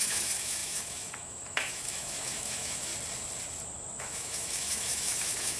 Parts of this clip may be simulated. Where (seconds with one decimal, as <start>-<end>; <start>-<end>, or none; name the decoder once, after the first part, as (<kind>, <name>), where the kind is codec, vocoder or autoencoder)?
0.0-2.9 (autoencoder, DAC-VAE); 4.0-5.6